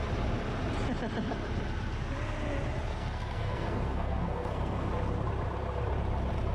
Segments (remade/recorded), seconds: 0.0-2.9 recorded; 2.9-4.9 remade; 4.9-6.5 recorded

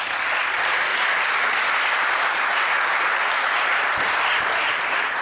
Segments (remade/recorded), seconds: 0.0-5.2 recorded